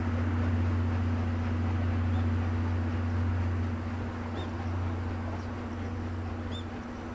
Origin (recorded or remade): recorded